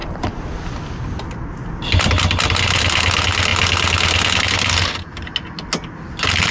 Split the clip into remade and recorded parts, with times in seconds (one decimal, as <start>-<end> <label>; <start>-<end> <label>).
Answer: 0.0-6.5 recorded